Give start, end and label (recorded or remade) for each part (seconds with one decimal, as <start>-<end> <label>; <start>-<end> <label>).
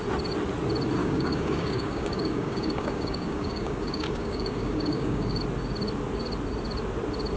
0.0-1.0 recorded; 1.0-5.4 remade; 5.4-7.4 recorded